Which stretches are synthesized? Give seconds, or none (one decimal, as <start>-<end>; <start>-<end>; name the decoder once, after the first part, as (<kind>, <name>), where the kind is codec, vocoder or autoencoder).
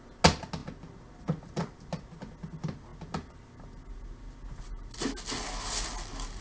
none